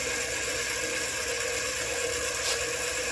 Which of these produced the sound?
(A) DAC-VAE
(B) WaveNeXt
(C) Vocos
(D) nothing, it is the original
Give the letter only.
D